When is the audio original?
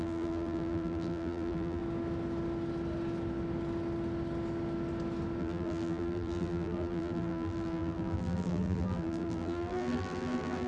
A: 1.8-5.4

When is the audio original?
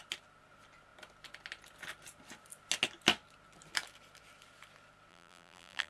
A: 0.0-5.1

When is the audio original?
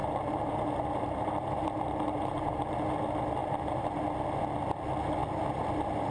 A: 2.8-3.4; 4.0-6.1